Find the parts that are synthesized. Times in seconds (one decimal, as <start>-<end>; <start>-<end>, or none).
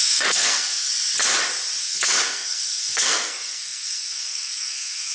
0.0-0.9; 1.8-5.1